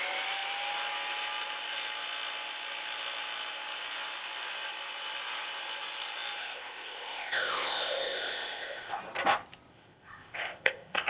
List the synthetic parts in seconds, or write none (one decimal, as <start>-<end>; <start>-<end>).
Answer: 6.4-9.0; 9.7-11.1